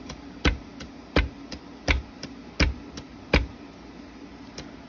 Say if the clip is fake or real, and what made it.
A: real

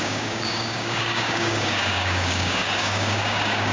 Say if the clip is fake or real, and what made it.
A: fake, codec, DAC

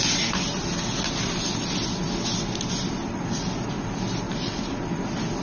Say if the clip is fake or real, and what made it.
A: real